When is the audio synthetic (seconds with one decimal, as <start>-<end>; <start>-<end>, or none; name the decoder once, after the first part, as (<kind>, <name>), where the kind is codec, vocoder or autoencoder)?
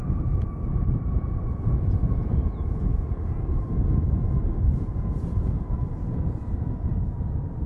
0.7-3.6 (vocoder, Vocos); 4.7-5.6